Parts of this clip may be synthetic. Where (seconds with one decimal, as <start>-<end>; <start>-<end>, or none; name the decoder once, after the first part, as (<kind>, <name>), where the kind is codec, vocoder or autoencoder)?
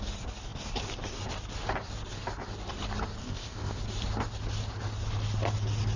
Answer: 3.2-3.8 (codec, ZipCodec)